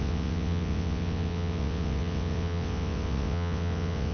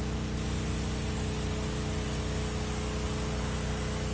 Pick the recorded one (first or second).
second